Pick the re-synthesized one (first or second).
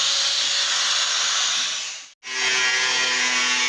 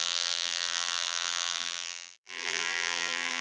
second